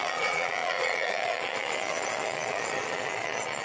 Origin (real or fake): fake